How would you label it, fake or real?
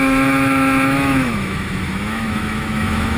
fake